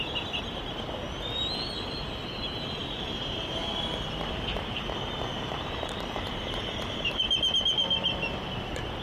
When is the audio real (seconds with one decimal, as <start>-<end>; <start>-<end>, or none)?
0.0-2.8; 7.2-9.0